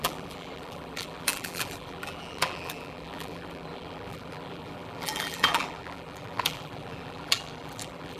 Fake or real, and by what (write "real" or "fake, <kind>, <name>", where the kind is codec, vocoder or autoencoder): fake, vocoder, BigVGAN v2